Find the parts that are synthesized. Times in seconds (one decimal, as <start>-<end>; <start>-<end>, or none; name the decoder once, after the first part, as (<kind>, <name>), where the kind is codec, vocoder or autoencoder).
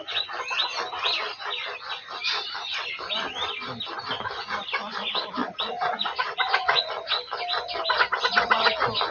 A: 5.4-6.8 (vocoder, Vocos)